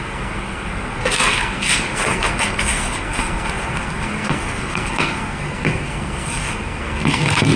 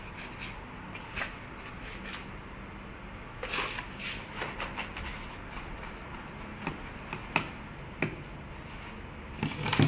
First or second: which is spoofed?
first